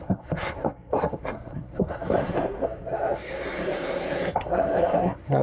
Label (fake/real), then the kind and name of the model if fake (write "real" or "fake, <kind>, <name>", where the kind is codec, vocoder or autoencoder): fake, codec, SNAC